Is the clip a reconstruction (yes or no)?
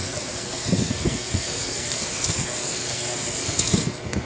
yes